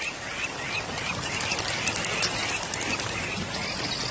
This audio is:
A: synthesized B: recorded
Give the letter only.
B